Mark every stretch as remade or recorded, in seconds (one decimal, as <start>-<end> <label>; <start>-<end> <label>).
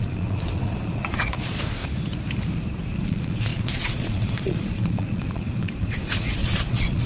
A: 0.0-1.8 remade; 1.8-2.8 recorded; 2.8-7.1 remade